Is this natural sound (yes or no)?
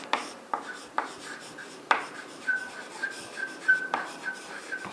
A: no